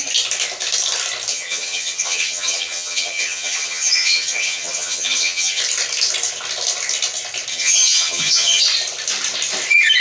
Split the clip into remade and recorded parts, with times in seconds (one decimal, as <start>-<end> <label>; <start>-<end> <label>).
0.0-1.3 recorded; 1.3-5.6 remade; 5.6-7.5 recorded; 7.5-8.6 remade; 8.6-10.0 recorded